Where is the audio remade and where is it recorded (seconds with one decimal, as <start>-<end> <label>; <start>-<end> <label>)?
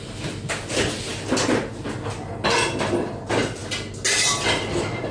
0.0-5.1 recorded